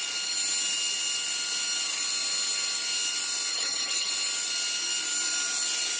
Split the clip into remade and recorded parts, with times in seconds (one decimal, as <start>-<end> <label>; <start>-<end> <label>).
0.0-3.5 recorded; 3.5-4.1 remade; 4.1-6.0 recorded